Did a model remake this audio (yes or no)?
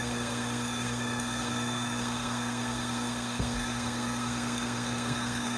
yes